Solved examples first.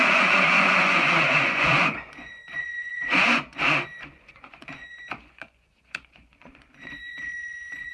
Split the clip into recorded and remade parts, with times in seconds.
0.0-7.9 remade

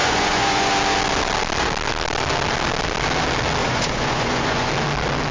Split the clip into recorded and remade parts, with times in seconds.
0.0-0.7 remade; 0.7-3.6 recorded; 3.6-4.7 remade; 4.7-5.3 recorded